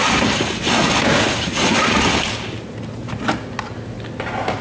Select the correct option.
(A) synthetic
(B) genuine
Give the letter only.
B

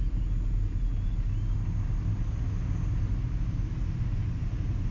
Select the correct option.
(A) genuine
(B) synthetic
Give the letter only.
A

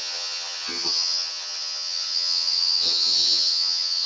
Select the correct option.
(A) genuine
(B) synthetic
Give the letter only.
B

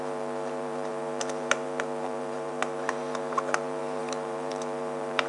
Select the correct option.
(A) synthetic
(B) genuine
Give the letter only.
A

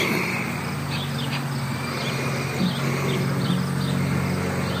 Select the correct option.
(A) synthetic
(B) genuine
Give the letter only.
B